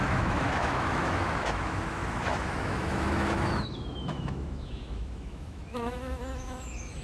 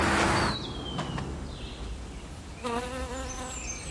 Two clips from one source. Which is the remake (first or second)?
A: first